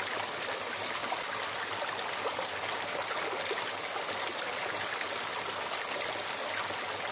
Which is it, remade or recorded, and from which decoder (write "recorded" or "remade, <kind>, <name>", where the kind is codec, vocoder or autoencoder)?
recorded